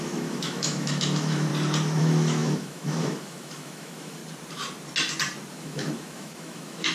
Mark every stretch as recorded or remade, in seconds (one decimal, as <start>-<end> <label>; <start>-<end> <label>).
0.0-1.5 remade; 1.5-2.0 recorded; 2.0-4.2 remade; 4.2-5.5 recorded; 5.5-6.9 remade